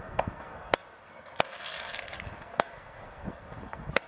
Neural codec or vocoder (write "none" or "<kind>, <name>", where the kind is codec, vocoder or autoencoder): codec, SNAC